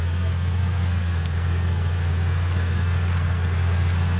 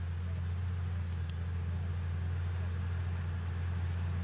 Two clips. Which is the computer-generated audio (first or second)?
first